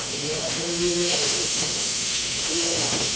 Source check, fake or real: fake